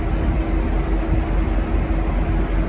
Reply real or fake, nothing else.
real